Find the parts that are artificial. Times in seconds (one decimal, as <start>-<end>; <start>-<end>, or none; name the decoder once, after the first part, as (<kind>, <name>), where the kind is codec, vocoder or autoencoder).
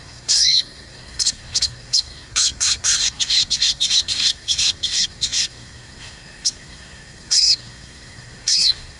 0.0-9.0 (codec, SNAC)